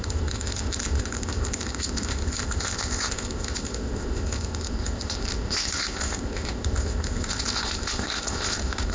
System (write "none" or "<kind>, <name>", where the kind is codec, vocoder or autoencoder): codec, ZipCodec